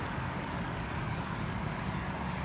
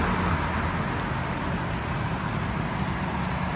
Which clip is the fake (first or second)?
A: first